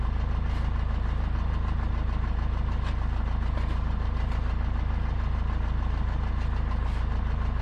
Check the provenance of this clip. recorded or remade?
recorded